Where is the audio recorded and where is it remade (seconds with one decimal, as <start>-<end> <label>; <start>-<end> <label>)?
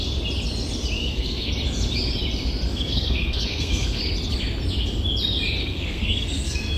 0.0-1.0 recorded; 1.0-1.5 remade; 1.5-2.7 recorded; 2.7-4.0 remade; 4.0-5.6 recorded; 5.6-6.8 remade